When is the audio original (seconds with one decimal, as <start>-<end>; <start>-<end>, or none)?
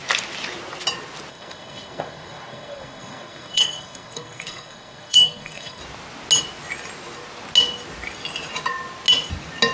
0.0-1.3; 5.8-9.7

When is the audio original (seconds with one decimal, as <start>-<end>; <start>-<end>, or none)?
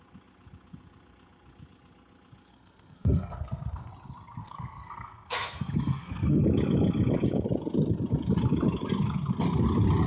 0.0-2.5; 3.9-4.4; 6.4-10.1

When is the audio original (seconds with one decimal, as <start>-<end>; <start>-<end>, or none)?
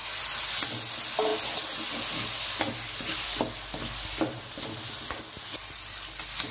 0.0-6.5